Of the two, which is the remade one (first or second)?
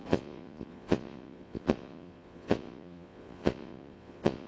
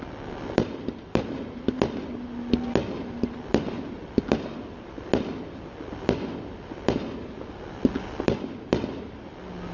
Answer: first